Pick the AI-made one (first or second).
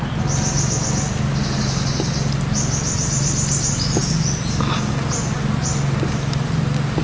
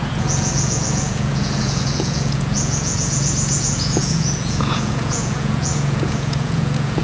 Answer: second